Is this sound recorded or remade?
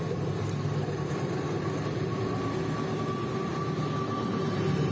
recorded